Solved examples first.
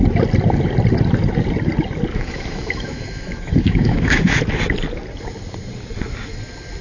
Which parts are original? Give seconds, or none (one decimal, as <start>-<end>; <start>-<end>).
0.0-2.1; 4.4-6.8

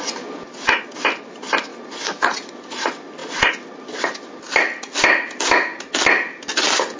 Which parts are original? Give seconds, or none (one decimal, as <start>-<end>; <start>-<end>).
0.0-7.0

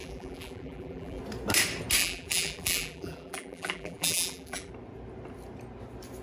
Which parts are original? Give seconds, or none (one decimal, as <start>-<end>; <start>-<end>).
1.2-2.0; 4.7-6.2